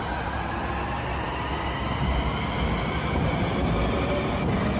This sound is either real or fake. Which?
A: real